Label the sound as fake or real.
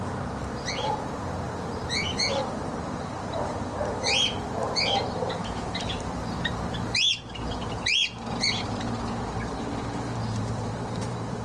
fake